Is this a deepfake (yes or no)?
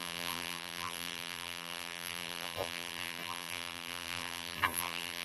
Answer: yes